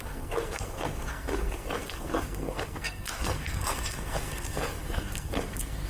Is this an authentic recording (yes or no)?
no